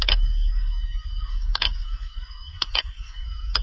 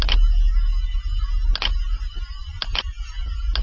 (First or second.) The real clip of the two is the second